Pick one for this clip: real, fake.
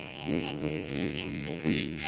fake